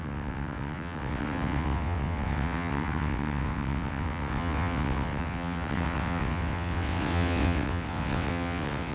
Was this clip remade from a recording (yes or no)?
yes